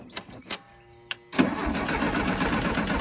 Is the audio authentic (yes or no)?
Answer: yes